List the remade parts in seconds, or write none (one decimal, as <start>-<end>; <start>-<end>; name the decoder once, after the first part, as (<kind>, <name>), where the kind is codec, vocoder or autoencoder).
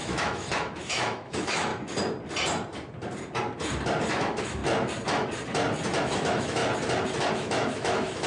0.0-1.7 (autoencoder, DAC-VAE); 4.1-4.6; 6.0-6.6; 7.3-8.3